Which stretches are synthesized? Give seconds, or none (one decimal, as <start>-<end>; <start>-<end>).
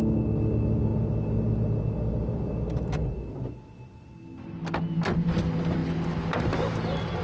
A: none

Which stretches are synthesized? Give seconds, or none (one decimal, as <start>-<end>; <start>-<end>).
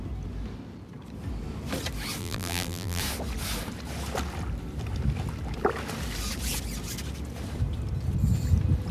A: 2.2-3.0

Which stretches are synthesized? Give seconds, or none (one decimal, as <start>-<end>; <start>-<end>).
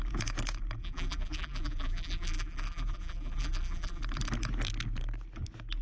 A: 0.8-4.0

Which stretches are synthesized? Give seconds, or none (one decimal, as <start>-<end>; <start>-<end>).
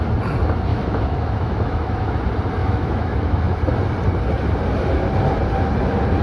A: 0.7-2.2; 2.6-3.6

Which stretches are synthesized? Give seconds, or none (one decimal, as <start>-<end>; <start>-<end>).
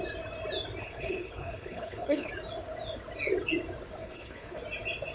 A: 0.8-2.3; 4.0-4.6